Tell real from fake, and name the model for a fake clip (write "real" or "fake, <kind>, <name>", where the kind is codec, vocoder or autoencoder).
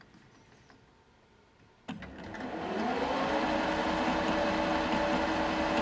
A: real